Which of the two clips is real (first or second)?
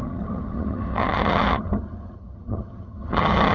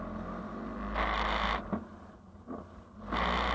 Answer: second